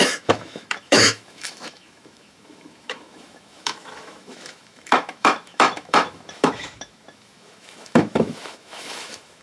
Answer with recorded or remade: remade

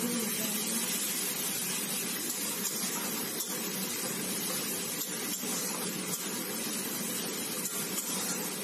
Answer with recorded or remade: recorded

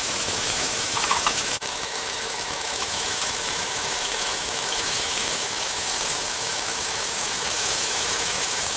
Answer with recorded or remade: remade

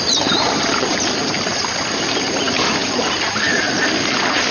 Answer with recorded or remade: recorded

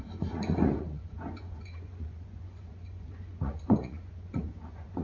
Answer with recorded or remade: remade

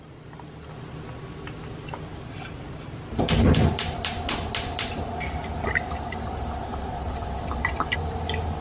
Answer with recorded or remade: recorded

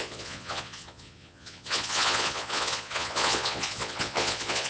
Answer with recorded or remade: remade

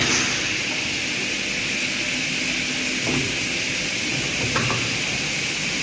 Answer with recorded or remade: recorded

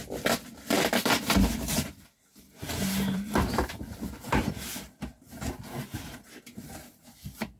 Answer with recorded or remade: remade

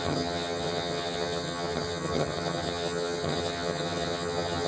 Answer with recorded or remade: remade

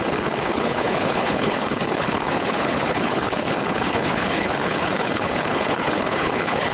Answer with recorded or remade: remade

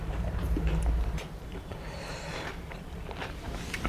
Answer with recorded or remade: remade